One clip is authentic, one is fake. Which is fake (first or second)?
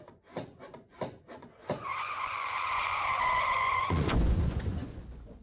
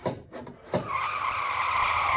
first